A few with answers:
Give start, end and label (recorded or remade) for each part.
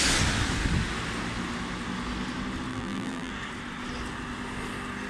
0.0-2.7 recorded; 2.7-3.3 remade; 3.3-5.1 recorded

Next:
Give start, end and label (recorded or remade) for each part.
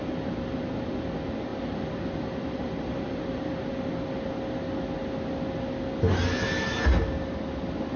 0.0-1.5 recorded; 1.5-3.7 remade; 3.7-8.0 recorded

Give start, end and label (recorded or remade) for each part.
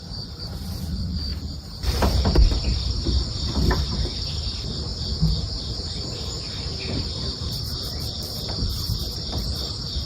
0.0-4.9 remade; 4.9-5.8 recorded; 5.8-10.1 remade